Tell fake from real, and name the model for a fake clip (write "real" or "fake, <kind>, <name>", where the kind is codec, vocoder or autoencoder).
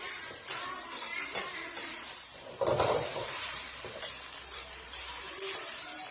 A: fake, vocoder, BigVGAN v2